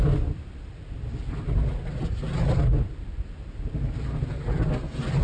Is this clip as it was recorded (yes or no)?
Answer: yes